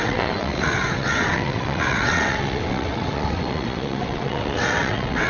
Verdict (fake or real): fake